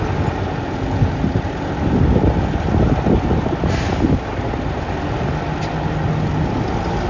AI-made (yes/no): no